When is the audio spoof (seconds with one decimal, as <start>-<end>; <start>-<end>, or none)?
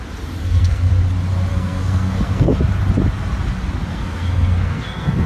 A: 0.4-0.9; 1.5-2.6; 3.9-5.3